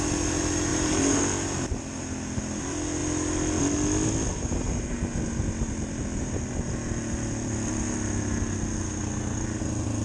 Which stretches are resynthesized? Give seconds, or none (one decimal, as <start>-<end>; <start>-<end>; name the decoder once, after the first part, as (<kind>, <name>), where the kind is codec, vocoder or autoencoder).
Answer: 0.7-1.2 (vocoder, BigVGAN v2)

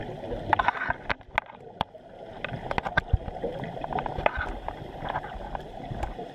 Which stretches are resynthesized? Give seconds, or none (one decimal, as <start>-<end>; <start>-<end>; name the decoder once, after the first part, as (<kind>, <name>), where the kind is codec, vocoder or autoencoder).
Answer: none

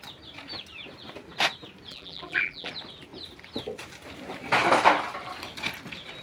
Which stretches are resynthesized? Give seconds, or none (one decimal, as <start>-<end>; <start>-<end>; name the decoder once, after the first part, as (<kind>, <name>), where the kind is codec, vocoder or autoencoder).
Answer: 1.9-2.7 (vocoder, BigVGAN v2)

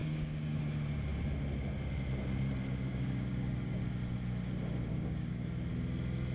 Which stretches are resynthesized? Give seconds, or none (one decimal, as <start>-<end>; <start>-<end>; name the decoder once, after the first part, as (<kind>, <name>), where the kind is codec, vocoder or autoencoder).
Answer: 0.0-0.6 (codec, DAC); 2.9-3.8; 4.9-5.7

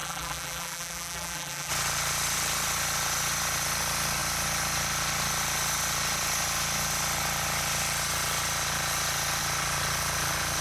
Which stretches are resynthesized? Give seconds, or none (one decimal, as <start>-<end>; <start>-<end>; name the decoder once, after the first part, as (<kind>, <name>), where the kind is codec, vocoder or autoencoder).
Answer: 0.0-1.7 (vocoder, BigVGAN v2)

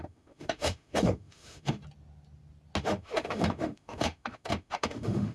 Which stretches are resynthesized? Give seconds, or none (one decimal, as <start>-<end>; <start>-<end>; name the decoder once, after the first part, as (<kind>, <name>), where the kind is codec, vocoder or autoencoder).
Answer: 0.0-1.8 (autoencoder, DAC-VAE); 2.8-5.3